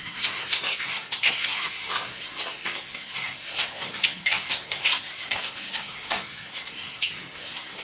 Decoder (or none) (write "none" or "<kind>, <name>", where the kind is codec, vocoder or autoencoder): codec, SNAC